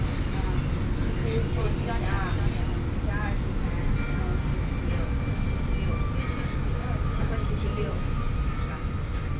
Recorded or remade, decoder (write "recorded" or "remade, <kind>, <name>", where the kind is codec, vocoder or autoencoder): recorded